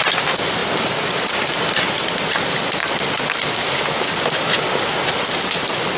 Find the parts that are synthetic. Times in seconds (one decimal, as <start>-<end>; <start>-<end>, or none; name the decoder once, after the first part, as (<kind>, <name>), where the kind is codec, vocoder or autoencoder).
0.6-1.8 (vocoder, BigVGAN v2)